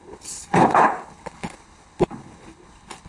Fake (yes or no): yes